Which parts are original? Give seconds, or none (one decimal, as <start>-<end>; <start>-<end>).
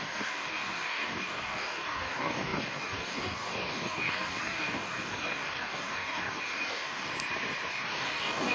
7.1-7.7